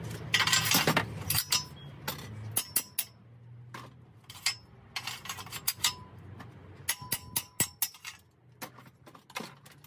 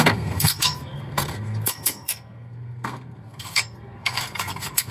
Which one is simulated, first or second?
second